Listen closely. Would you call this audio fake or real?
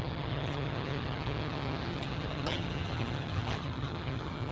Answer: fake